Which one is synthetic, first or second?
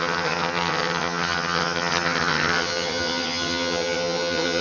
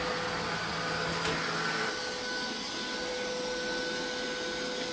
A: first